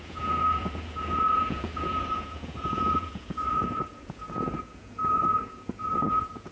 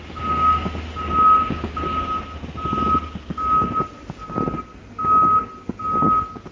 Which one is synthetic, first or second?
first